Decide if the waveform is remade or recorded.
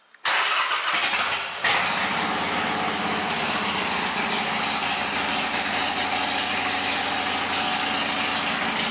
recorded